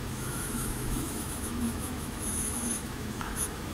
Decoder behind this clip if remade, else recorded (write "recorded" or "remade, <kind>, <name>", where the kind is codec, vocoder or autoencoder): remade, autoencoder, DAC-VAE